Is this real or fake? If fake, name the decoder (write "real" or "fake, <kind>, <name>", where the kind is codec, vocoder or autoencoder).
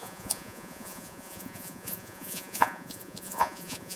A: fake, vocoder, Vocos